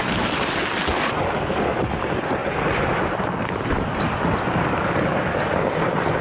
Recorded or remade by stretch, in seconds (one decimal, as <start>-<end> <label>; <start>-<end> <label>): 0.0-6.2 recorded